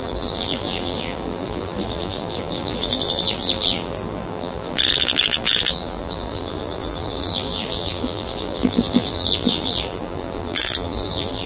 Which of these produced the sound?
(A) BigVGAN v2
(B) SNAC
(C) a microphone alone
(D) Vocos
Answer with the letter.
A